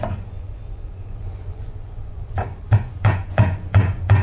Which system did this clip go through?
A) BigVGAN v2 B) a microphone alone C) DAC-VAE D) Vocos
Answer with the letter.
D